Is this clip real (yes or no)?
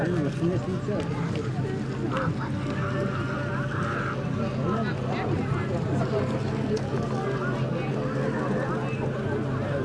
yes